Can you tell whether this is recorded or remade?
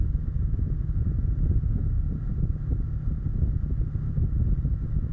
recorded